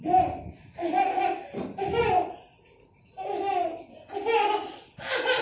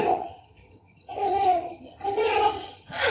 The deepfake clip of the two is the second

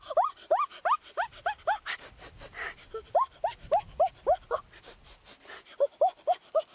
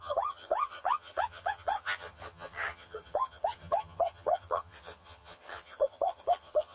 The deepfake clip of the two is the second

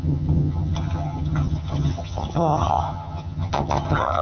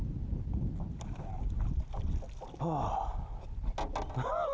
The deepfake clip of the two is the first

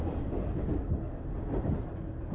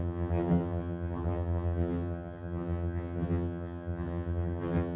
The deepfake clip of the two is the second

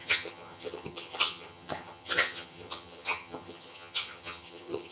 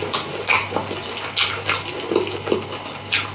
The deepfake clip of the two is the first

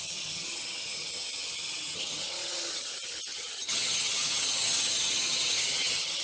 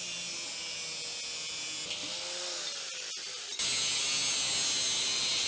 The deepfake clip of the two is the first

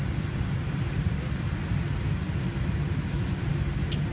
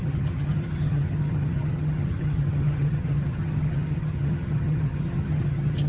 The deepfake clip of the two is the second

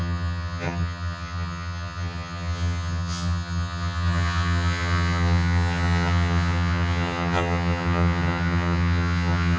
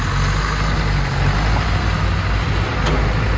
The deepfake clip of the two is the first